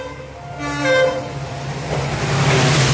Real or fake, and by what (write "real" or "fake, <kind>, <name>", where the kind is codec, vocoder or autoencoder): real